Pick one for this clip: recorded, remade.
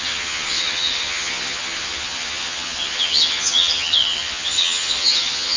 remade